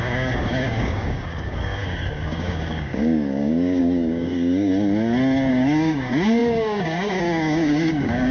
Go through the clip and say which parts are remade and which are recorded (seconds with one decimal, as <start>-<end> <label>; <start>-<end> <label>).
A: 0.0-4.7 remade; 4.7-5.5 recorded; 5.5-8.3 remade